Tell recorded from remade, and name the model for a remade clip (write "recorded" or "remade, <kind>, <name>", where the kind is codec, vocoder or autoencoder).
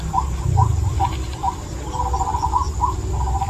recorded